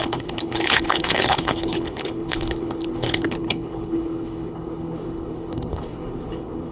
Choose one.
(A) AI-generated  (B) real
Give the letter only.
A